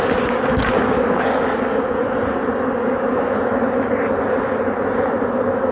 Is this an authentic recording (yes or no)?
yes